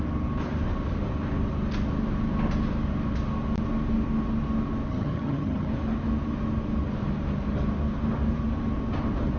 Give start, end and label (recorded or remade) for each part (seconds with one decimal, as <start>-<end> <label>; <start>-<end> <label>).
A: 0.0-4.9 recorded; 4.9-5.7 remade; 5.7-9.4 recorded